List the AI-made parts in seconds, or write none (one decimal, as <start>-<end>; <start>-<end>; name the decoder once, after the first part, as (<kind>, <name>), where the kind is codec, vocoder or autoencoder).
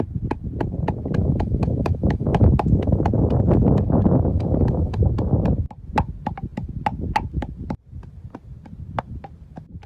1.2-3.0 (autoencoder, DAC-VAE); 4.3-5.0